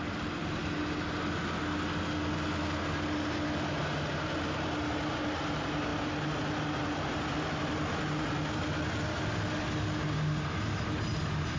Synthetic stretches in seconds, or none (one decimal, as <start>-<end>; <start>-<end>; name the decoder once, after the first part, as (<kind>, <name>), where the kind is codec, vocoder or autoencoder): none